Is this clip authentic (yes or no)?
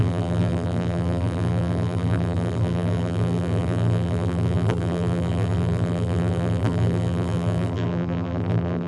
no